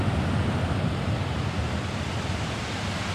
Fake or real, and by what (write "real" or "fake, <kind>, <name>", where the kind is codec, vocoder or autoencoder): real